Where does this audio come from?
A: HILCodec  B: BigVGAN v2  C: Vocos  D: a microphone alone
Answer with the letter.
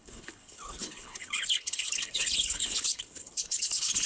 A